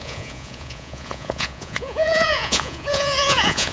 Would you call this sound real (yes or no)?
no